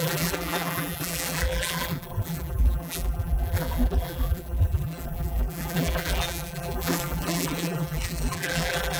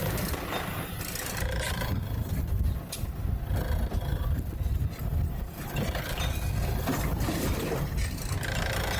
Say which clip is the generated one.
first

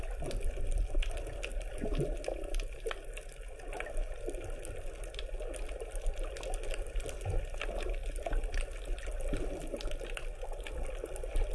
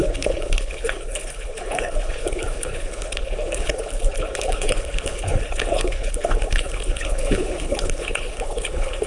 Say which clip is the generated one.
second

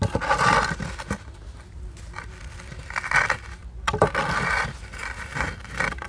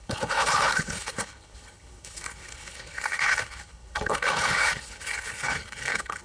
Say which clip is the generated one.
second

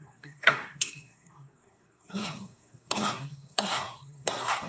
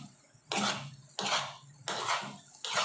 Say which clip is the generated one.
first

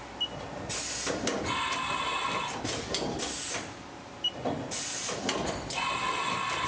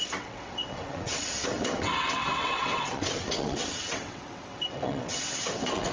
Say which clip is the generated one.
second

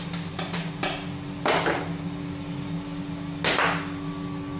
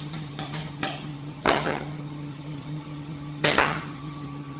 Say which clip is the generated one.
second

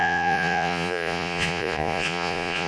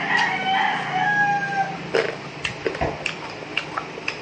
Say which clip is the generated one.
first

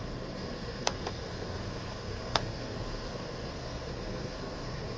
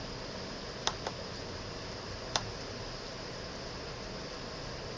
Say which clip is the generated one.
first